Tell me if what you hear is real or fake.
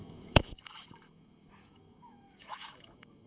fake